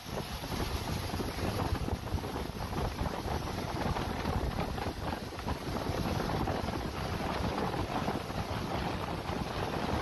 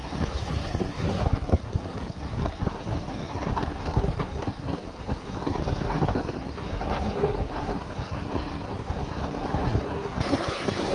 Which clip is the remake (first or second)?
second